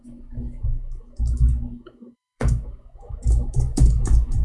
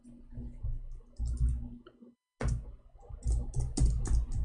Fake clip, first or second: first